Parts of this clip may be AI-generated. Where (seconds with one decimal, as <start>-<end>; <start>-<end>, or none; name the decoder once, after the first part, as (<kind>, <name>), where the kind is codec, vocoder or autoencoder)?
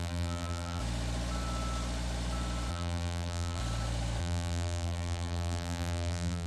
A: 0.0-0.8 (vocoder, BigVGAN v2); 2.7-3.6; 4.2-6.5